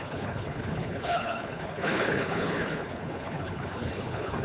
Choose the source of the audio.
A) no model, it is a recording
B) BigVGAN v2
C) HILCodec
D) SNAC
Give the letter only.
C